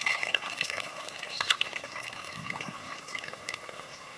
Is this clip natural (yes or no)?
no